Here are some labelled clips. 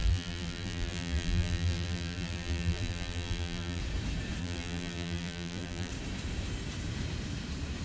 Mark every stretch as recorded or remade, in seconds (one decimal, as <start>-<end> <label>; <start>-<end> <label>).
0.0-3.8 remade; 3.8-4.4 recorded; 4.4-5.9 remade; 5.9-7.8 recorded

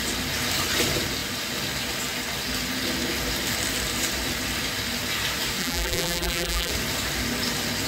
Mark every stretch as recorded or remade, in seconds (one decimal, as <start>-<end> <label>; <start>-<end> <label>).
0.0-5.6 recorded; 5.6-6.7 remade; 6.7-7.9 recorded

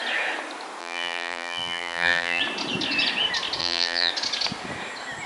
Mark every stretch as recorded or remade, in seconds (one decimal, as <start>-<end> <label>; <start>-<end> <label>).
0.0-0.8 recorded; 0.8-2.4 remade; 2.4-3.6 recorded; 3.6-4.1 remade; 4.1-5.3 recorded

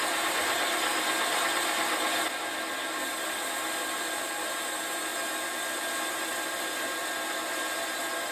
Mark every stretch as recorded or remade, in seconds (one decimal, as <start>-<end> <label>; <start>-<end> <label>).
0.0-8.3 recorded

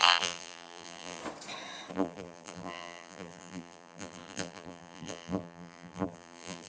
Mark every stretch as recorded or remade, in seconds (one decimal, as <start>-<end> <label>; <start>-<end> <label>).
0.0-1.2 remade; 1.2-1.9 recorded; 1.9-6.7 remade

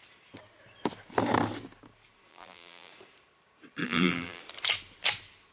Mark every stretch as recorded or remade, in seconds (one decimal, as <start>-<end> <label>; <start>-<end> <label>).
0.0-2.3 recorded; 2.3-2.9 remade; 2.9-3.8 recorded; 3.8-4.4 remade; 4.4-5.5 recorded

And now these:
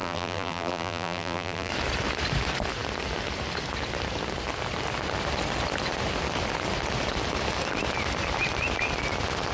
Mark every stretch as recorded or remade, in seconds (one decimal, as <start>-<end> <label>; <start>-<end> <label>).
0.0-1.7 remade; 1.7-9.5 recorded

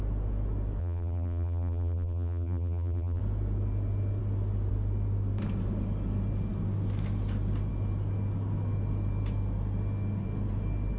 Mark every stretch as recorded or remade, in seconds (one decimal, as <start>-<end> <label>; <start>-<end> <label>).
0.0-0.8 recorded; 0.8-3.2 remade; 3.2-11.0 recorded